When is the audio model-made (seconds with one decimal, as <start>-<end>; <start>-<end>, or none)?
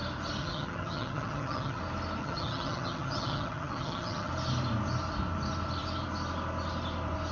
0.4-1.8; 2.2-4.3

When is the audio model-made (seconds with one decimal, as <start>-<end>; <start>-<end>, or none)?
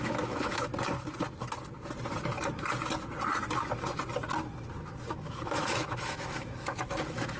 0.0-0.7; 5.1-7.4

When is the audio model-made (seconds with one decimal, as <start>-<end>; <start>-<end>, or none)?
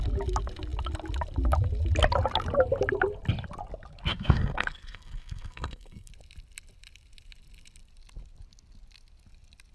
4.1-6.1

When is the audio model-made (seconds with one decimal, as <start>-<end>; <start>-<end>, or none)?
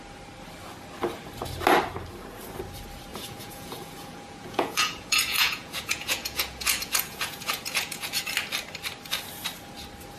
3.1-8.2